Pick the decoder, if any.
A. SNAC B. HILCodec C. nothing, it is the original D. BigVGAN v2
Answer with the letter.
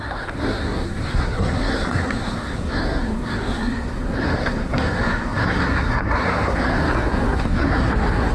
A